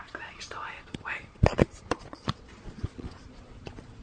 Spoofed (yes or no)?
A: yes